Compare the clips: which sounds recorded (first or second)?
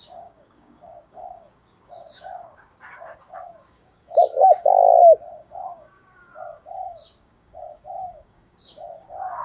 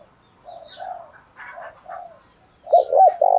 second